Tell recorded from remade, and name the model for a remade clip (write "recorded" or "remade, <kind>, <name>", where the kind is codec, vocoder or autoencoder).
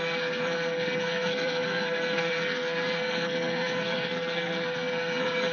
remade, codec, SNAC